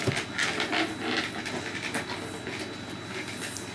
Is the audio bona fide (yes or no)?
yes